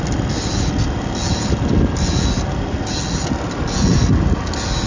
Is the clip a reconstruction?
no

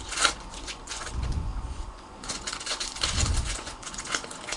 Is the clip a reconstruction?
yes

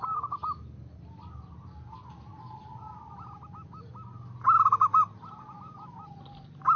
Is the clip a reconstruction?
no